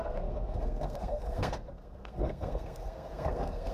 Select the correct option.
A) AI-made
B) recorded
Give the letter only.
A